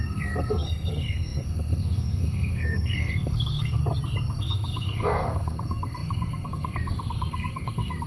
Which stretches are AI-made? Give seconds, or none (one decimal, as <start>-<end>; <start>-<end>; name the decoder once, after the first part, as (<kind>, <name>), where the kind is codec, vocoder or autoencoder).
0.0-3.8 (codec, SNAC); 4.4-8.1